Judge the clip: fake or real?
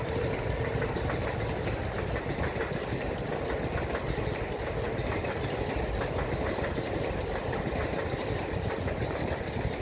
real